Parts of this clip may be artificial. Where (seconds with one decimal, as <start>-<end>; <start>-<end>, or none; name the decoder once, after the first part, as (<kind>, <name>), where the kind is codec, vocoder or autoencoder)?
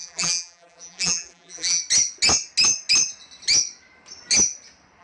0.0-1.8 (vocoder, BigVGAN v2)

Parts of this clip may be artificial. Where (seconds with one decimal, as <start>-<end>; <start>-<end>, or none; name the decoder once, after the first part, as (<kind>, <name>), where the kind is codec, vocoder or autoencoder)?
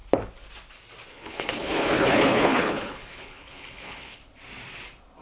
1.1-4.2 (codec, HILCodec)